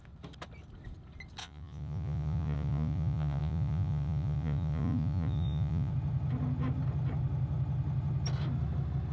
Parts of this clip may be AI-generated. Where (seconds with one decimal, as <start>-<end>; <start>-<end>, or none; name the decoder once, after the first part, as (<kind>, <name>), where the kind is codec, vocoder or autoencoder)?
1.4-5.9 (vocoder, Vocos)